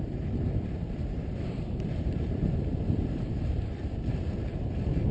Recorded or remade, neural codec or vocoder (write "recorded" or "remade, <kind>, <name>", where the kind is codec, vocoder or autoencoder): remade, vocoder, BigVGAN v2